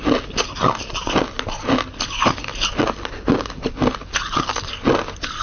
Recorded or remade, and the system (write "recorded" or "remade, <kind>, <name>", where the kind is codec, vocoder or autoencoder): recorded